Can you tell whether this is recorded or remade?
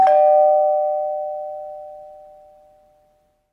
recorded